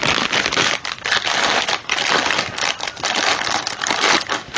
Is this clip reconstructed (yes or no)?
no